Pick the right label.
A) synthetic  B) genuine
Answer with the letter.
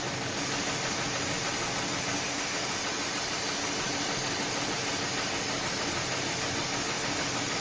B